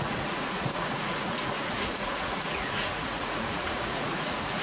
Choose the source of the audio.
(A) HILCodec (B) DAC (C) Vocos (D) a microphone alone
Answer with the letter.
C